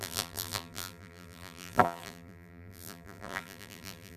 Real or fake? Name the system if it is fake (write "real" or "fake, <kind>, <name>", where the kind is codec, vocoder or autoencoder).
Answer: fake, vocoder, BigVGAN v2